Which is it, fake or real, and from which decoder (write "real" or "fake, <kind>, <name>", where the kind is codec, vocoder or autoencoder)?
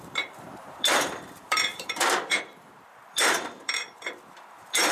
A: fake, vocoder, BigVGAN v2